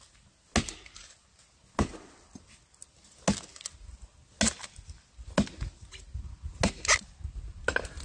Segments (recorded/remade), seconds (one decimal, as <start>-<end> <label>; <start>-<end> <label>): 0.0-8.0 recorded